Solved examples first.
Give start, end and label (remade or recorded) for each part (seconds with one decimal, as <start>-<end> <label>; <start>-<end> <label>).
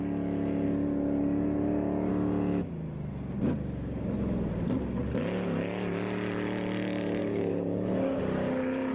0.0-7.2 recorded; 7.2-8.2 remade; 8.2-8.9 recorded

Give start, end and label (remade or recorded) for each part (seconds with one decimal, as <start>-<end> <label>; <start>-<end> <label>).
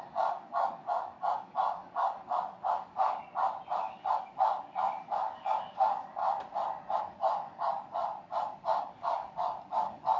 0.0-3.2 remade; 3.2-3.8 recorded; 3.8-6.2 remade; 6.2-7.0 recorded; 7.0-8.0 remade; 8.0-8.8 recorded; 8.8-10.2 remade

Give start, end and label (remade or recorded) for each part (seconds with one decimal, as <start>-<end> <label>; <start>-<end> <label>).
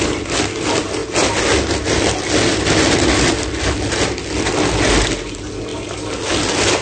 0.0-6.8 recorded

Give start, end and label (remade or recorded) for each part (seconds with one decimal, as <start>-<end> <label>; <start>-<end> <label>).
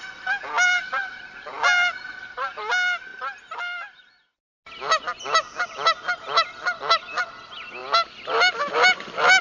0.0-9.4 recorded